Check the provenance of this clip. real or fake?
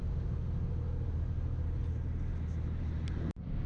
real